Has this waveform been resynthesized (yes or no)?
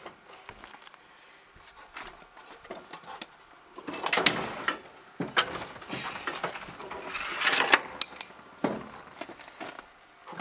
no